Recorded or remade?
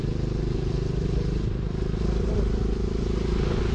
recorded